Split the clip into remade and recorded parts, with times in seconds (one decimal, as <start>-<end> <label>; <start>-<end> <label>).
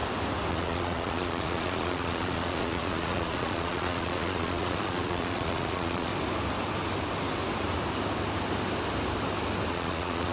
0.0-0.5 recorded; 0.5-6.1 remade; 6.1-9.7 recorded; 9.7-10.3 remade